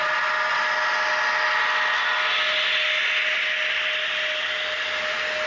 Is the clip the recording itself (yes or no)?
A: yes